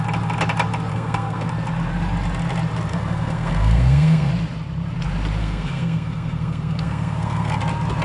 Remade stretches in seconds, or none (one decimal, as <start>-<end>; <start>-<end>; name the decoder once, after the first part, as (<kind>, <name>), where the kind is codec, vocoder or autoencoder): 0.9-1.5 (codec, SNAC); 2.9-4.3; 5.4-7.6